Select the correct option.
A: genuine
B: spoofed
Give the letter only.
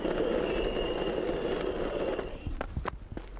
A